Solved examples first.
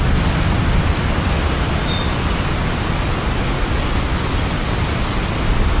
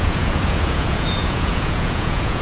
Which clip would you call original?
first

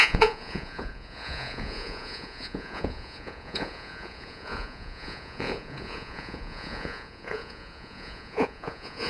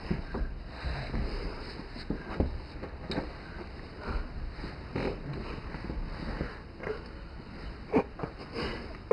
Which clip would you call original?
second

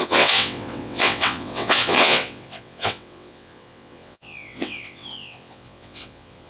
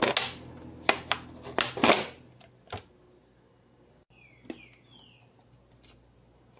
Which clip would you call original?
second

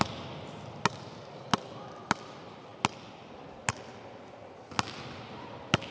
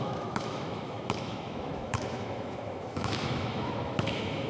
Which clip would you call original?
first